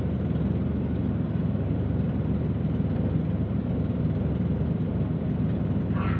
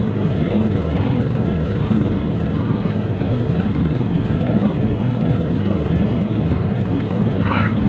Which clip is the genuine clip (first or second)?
first